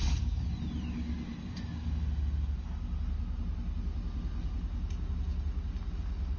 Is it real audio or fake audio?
real